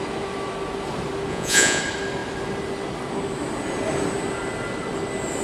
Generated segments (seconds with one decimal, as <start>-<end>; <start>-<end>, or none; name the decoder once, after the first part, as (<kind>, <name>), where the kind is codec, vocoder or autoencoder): 1.3-1.8 (vocoder, Vocos)